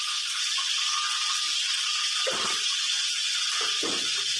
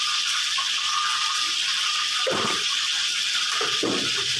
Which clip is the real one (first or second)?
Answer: first